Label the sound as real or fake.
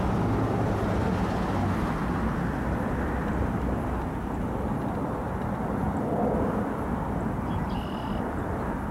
real